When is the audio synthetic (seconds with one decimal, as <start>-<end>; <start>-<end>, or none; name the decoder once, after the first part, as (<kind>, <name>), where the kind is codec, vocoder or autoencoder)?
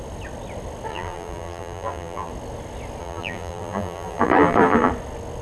0.9-2.3 (vocoder, BigVGAN v2); 3.0-4.9